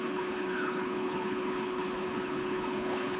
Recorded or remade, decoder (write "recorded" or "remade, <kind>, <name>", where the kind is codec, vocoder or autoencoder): remade, codec, HILCodec